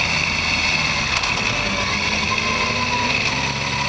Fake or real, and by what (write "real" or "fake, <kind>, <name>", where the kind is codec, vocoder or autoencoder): real